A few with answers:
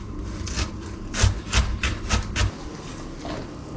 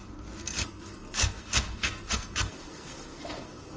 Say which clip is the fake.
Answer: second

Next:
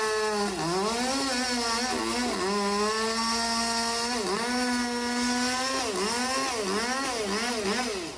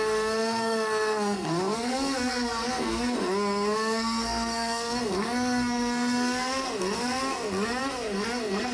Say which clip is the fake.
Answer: second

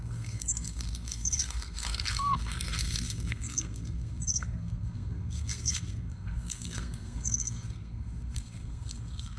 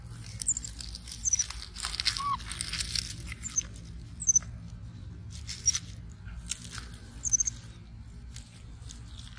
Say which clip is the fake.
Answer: first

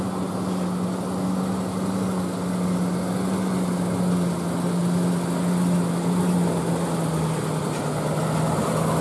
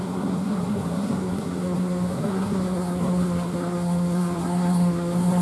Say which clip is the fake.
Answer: second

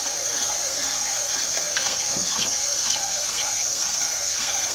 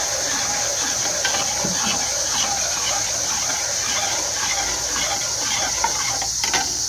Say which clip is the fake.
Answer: first